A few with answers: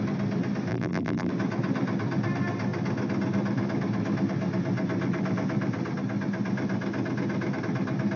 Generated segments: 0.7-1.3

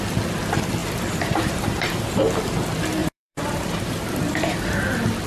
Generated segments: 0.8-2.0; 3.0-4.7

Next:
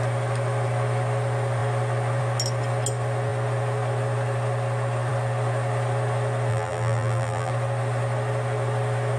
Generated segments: 6.5-7.5

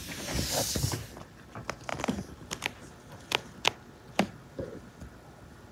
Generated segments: none

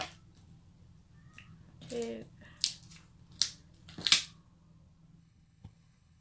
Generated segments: 5.2-6.2